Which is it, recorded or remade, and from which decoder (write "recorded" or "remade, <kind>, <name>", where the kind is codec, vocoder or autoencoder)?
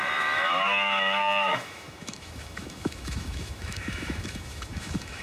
remade, autoencoder, DAC-VAE